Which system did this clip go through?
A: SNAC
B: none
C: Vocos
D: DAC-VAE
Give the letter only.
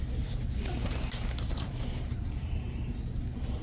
B